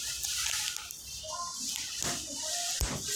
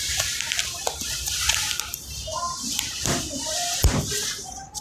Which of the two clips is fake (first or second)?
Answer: second